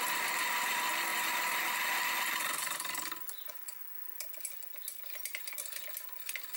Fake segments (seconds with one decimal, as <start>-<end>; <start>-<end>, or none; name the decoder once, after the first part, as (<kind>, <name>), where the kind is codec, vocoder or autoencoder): 0.0-3.8 (vocoder, BigVGAN v2); 6.1-6.6